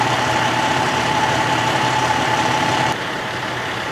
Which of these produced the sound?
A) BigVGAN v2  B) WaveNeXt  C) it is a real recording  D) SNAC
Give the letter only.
A